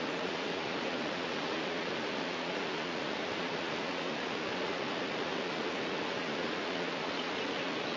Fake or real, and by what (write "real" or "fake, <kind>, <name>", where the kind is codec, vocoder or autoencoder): fake, vocoder, Vocos